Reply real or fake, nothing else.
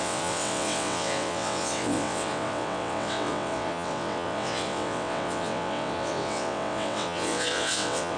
fake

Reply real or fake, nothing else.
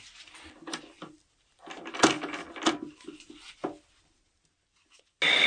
real